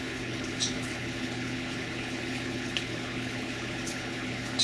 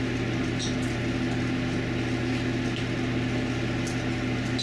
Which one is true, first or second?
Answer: second